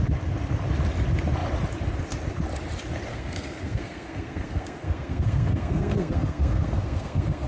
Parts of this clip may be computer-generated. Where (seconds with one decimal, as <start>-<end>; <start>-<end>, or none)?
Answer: 3.1-7.5